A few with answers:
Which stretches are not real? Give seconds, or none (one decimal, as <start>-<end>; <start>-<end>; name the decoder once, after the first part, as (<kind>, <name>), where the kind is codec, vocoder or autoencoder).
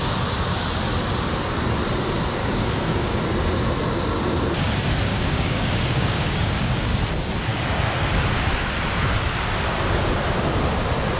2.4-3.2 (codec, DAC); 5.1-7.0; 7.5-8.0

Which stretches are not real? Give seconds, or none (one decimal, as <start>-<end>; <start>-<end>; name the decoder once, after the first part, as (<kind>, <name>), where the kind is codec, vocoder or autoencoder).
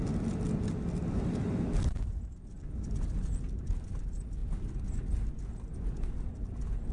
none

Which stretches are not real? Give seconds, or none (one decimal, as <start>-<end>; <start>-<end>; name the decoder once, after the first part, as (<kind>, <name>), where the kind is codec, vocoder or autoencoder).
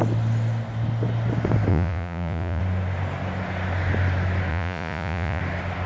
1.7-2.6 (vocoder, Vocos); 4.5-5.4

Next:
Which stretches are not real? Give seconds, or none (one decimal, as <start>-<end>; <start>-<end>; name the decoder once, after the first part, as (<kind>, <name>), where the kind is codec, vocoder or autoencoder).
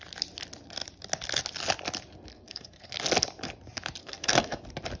2.3-2.9 (codec, SNAC); 4.0-4.6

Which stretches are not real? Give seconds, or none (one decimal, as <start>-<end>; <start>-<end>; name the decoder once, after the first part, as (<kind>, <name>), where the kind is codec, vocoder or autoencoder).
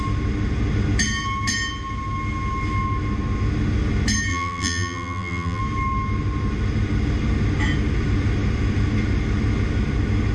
4.3-5.6 (vocoder, BigVGAN v2)